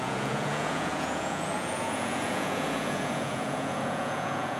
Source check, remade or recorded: remade